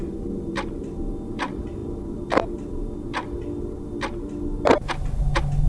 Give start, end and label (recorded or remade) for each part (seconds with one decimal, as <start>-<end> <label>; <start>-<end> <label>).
0.0-5.7 recorded